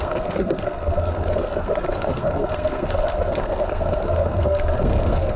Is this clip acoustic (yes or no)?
no